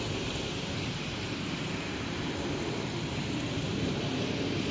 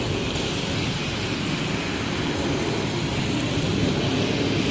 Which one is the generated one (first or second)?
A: first